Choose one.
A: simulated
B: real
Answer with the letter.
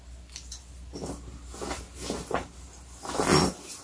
B